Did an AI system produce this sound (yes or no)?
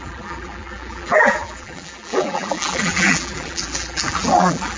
yes